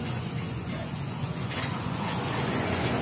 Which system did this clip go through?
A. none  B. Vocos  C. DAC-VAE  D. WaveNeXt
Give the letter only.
B